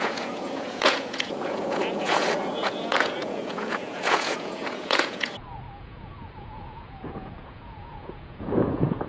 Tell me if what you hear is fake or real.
fake